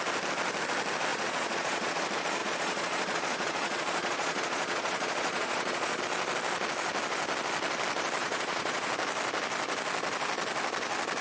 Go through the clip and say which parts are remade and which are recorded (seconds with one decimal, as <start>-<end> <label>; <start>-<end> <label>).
0.0-1.1 recorded; 1.1-2.0 remade; 2.0-2.4 recorded; 2.4-6.0 remade; 6.0-8.2 recorded; 8.2-8.9 remade; 8.9-11.2 recorded